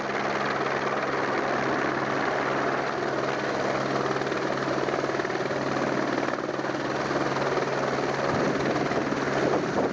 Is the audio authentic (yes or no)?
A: yes